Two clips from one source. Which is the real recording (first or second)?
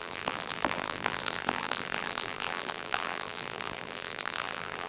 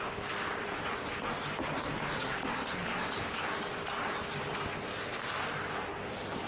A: second